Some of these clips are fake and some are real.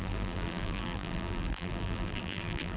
fake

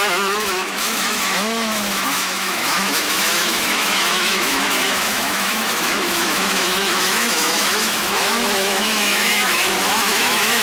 fake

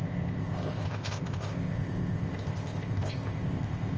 fake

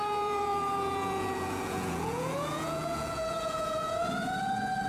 fake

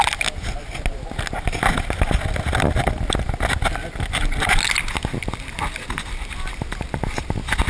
real